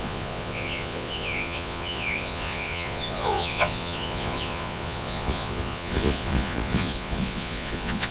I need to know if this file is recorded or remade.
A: remade